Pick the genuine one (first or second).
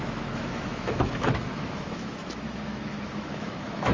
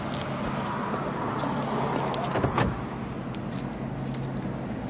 second